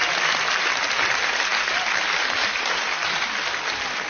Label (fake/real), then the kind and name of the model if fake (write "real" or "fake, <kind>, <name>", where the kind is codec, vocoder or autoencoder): real